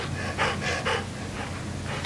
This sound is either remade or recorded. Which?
recorded